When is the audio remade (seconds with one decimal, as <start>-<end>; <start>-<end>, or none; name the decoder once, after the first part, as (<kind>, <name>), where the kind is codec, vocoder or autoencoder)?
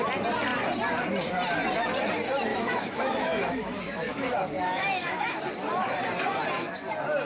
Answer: 2.5-5.4 (autoencoder, DAC-VAE)